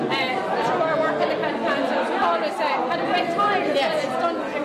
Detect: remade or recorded recorded